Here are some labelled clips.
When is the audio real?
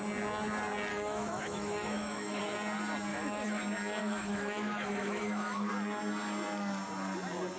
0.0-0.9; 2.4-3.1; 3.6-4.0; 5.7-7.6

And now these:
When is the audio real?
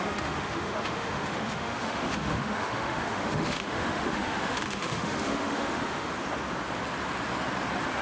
6.1-8.0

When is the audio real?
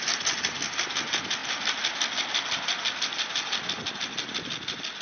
0.0-5.0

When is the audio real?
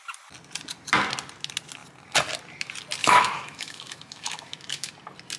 0.0-3.0; 4.9-5.4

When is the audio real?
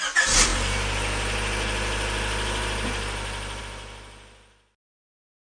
0.0-5.5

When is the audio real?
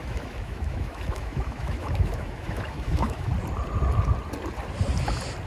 3.3-5.5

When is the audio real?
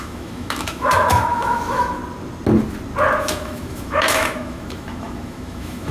2.0-3.2